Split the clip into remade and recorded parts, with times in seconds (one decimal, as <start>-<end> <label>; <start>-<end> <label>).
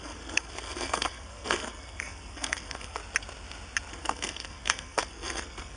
0.0-3.0 remade; 3.0-3.9 recorded; 3.9-5.8 remade